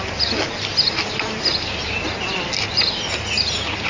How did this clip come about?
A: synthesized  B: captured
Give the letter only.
B